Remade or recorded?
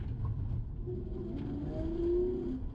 recorded